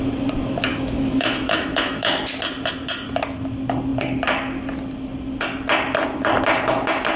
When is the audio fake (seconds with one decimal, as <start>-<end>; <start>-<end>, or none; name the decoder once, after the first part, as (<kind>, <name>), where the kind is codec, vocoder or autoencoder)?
0.7-2.2 (autoencoder, DAC-VAE)